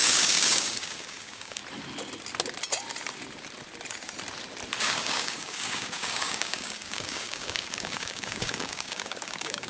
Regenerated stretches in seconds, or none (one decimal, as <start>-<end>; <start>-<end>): 0.0-1.6; 4.8-9.7